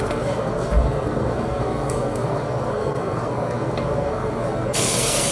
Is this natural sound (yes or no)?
no